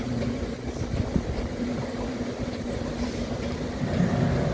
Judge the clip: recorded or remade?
recorded